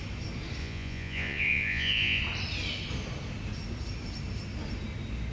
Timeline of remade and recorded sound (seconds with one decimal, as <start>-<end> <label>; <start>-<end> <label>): 0.0-0.6 recorded; 0.6-2.2 remade; 2.2-5.3 recorded